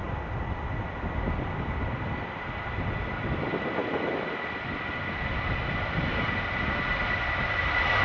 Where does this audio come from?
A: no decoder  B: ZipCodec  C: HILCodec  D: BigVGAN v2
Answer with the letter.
A